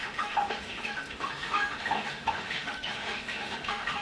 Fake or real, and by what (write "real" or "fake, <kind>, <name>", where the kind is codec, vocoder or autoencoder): fake, autoencoder, DAC-VAE